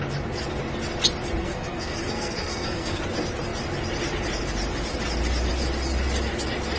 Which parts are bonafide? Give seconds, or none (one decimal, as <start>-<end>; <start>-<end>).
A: 0.0-1.4; 3.0-6.8